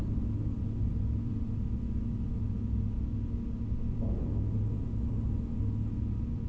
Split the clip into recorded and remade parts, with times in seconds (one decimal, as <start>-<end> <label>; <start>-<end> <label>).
0.0-6.5 recorded